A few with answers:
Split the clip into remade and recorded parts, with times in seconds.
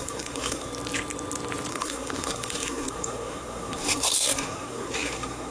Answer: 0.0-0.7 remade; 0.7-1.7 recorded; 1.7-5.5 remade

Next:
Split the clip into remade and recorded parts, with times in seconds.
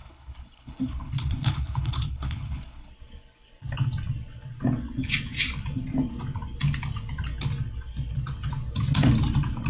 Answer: 0.0-2.9 remade; 2.9-9.7 recorded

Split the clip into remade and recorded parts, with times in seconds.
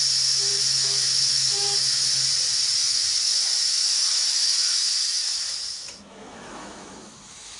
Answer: 0.0-0.5 recorded; 0.5-2.3 remade; 2.3-2.8 recorded; 2.8-7.6 remade